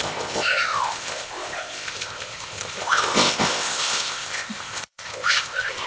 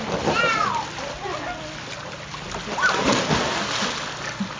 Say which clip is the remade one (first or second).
first